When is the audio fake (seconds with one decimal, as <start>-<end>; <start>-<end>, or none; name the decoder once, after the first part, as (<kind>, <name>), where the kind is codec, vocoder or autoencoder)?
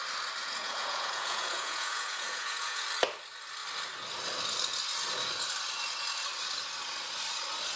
0.4-2.8 (vocoder, Vocos)